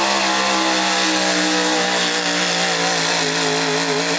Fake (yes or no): no